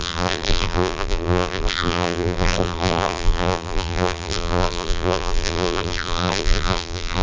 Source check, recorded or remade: remade